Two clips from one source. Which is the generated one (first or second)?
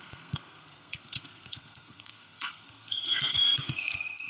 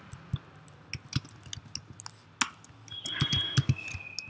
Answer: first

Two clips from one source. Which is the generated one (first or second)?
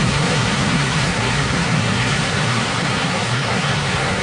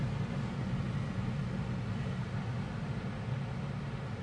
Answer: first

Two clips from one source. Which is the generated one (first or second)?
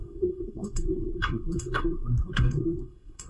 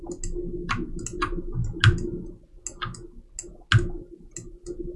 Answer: first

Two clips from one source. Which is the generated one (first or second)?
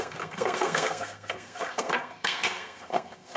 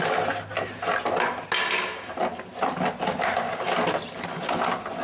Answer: first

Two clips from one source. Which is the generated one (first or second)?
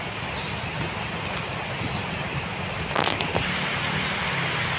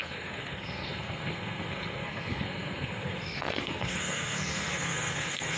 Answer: second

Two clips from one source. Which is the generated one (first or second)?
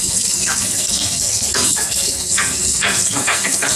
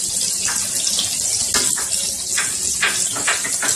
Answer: first